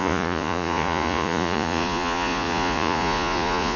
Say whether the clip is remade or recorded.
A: remade